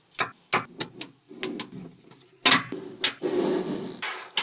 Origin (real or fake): real